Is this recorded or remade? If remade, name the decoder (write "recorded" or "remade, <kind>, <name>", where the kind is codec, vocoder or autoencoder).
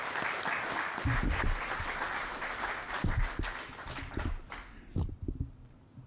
recorded